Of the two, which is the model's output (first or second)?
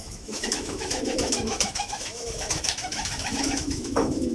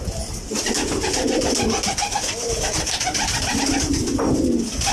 first